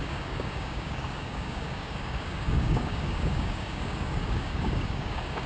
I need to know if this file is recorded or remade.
remade